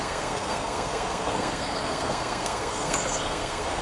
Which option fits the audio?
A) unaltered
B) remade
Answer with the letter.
B